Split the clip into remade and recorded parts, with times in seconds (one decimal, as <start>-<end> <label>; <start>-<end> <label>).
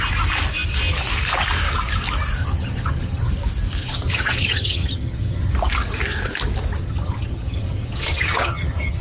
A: 0.0-2.4 recorded; 2.4-3.3 remade; 3.3-3.8 recorded; 3.8-5.5 remade; 5.5-6.8 recorded; 6.8-9.0 remade